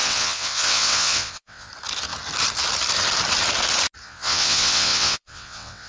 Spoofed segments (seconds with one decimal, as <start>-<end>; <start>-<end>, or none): 0.0-1.7; 4.0-5.9